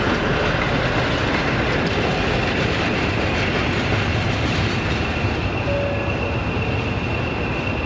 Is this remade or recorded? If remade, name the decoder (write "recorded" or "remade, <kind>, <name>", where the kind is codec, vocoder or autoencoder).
recorded